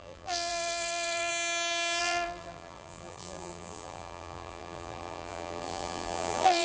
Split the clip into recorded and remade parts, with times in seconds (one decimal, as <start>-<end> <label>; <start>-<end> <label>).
0.0-1.3 remade; 1.3-2.0 recorded; 2.0-6.6 remade